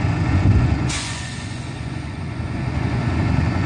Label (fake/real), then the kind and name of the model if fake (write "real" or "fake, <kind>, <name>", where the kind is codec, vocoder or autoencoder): fake, vocoder, Vocos